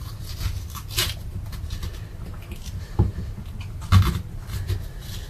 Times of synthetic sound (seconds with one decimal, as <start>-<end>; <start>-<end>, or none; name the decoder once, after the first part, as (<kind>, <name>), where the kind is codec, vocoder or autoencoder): 2.6-3.2 (vocoder, BigVGAN v2)